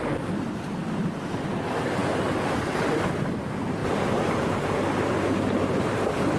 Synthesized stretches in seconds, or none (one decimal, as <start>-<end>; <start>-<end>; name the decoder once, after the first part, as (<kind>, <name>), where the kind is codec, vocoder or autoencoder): 3.8-4.5 (vocoder, BigVGAN v2)